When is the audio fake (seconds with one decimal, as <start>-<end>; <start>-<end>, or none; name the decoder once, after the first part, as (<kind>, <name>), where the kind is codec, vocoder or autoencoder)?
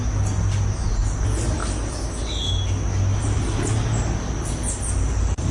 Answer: none